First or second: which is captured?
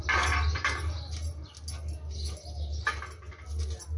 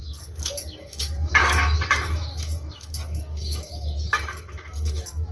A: first